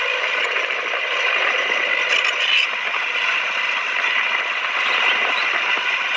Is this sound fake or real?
real